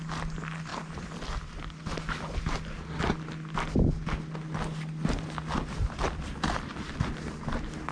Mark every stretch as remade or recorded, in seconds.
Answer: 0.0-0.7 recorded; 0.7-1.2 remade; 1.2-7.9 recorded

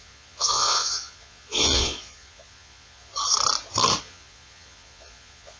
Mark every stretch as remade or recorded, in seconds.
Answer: 0.0-3.1 remade; 3.1-4.0 recorded; 4.0-5.6 remade

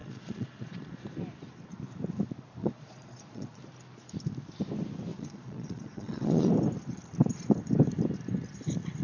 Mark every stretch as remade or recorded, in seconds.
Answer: 0.0-0.9 remade; 0.9-2.6 recorded; 2.6-3.6 remade; 3.6-5.1 recorded; 5.1-6.5 remade; 6.5-9.0 recorded